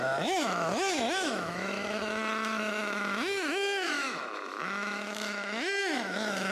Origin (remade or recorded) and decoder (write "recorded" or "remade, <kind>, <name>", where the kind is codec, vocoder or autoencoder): remade, autoencoder, DAC-VAE